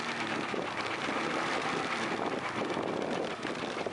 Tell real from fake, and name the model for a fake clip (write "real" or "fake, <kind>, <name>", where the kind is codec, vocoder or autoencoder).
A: fake, vocoder, BigVGAN v2